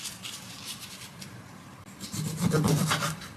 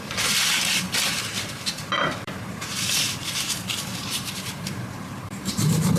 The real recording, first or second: first